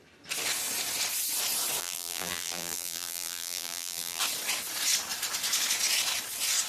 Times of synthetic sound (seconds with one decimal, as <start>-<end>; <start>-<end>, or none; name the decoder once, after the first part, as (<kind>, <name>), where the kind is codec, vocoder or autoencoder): 1.8-4.2 (vocoder, BigVGAN v2)